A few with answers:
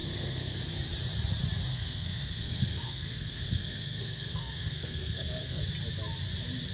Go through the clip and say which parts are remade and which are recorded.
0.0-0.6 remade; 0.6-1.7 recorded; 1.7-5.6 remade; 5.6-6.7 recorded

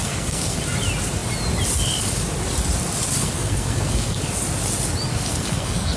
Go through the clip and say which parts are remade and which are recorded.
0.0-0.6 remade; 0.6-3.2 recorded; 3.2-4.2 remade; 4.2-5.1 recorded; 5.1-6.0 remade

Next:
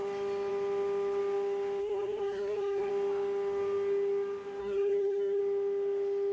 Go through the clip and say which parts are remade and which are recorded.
0.0-1.8 recorded; 1.8-2.9 remade; 2.9-4.6 recorded; 4.6-5.4 remade; 5.4-6.3 recorded

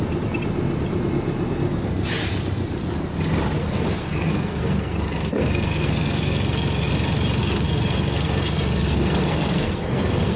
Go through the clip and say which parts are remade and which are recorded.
0.0-3.6 recorded; 3.6-6.9 remade; 6.9-7.4 recorded; 7.4-10.4 remade

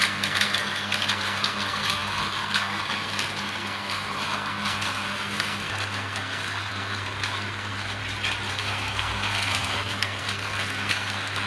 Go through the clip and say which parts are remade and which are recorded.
0.0-8.0 remade; 8.0-8.5 recorded; 8.5-11.5 remade